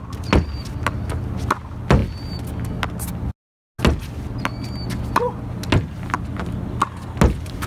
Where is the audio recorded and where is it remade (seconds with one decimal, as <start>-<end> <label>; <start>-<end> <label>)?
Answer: 0.0-7.7 recorded